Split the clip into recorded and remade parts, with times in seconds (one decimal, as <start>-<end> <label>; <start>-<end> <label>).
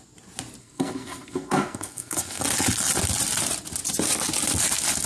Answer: 0.0-0.6 recorded; 0.6-2.4 remade; 2.4-5.1 recorded